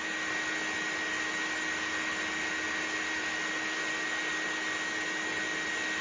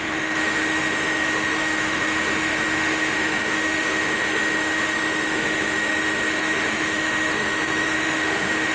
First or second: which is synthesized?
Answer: second